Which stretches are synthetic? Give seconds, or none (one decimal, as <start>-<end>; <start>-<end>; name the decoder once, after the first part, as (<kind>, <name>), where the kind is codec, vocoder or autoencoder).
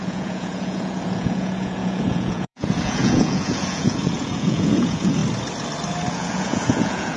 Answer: 0.0-5.2 (vocoder, Vocos); 6.1-7.2